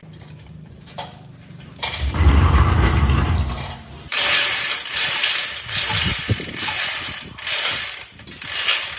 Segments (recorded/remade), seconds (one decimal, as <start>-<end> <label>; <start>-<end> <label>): 0.0-6.1 remade; 6.1-9.0 recorded